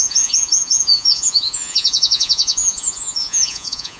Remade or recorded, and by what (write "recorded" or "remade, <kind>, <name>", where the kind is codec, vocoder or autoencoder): remade, vocoder, Vocos